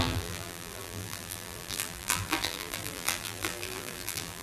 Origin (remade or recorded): remade